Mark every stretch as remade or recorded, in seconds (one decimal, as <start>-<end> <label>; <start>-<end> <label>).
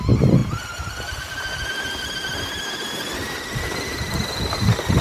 0.0-5.0 recorded